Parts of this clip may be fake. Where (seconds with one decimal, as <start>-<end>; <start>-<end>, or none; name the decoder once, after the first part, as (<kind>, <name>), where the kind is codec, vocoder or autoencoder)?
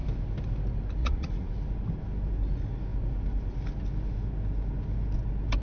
1.0-1.5 (vocoder, Vocos)